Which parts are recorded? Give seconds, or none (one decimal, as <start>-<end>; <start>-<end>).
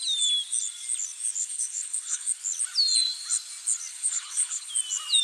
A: 0.0-1.4; 2.4-3.9; 4.7-5.2